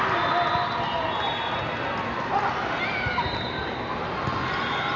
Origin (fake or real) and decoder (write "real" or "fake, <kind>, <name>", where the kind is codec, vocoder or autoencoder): real